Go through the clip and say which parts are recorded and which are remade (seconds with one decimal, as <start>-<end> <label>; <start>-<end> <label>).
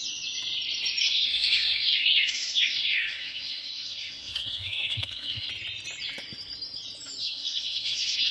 0.0-1.0 recorded; 1.0-5.5 remade; 5.5-7.2 recorded; 7.2-8.3 remade